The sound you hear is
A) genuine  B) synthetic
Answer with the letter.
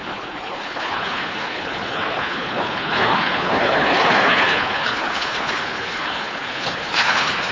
B